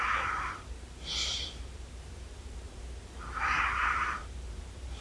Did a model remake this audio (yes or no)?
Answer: yes